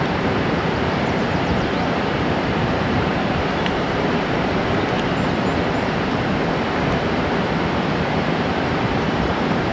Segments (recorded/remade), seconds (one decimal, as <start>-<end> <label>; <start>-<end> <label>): 0.0-4.6 remade; 4.6-7.7 recorded; 7.7-9.7 remade